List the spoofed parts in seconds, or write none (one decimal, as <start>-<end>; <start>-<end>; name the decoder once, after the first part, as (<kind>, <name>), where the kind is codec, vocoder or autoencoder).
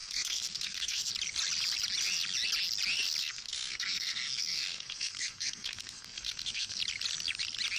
0.0-1.1 (codec, SNAC); 3.2-6.8